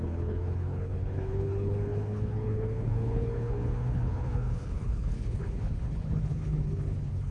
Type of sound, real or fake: fake